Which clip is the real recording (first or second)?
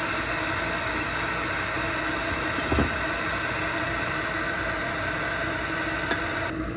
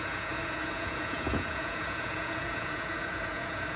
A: first